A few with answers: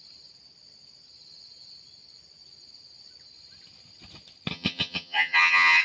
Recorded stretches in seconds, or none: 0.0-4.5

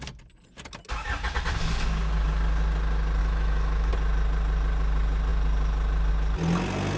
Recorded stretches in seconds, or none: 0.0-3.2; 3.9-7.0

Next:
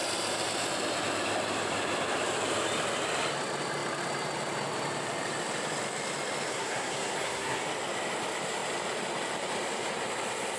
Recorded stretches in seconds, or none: 0.0-6.5; 7.6-10.6

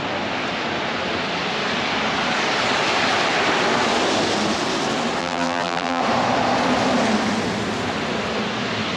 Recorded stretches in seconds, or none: 0.0-5.2; 6.0-9.0

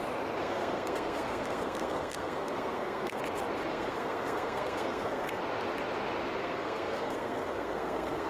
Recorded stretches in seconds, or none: 0.0-0.4; 3.2-3.7; 5.4-6.4

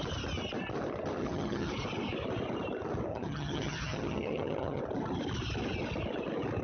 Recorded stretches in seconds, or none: 0.0-1.2; 1.7-3.1; 4.8-6.6

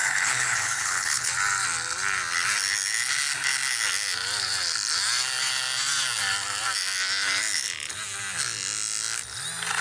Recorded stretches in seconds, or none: 1.3-9.8

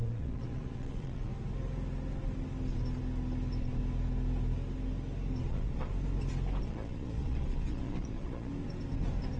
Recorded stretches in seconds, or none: 1.3-5.5; 5.9-6.6; 8.5-9.4